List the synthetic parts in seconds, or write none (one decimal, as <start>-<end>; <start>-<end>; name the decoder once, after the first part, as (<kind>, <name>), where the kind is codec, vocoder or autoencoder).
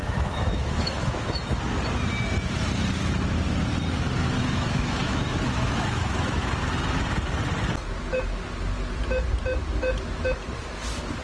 0.0-1.6 (autoencoder, DAC-VAE); 4.4-6.5